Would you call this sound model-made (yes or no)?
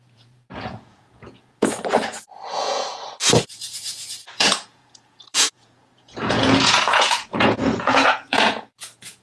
yes